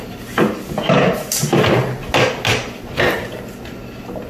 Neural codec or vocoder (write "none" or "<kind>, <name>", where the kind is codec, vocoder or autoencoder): none